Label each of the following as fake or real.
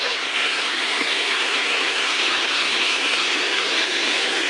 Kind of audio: fake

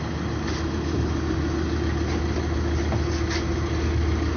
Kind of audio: real